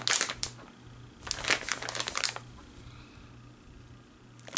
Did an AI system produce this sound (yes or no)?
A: no